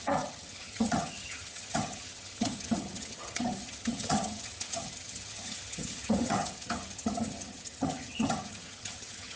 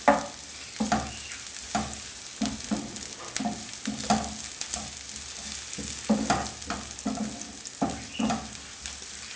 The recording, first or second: second